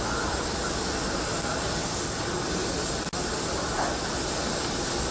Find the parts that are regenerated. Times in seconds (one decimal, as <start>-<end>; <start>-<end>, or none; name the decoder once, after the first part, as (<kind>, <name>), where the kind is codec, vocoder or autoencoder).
none